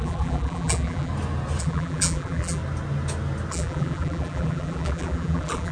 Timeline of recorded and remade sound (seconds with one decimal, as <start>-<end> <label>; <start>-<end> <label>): 0.0-1.1 remade; 1.1-1.6 recorded; 1.6-2.6 remade; 2.6-3.5 recorded; 3.5-5.7 remade